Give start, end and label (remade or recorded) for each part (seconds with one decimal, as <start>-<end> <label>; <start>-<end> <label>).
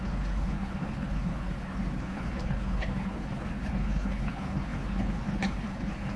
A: 0.0-6.2 remade